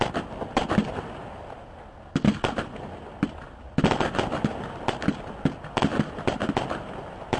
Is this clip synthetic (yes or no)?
no